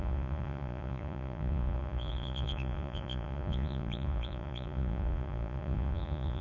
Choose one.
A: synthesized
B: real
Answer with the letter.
A